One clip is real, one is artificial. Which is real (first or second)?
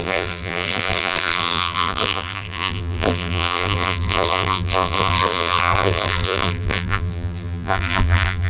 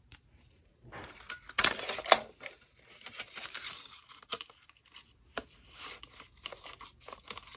second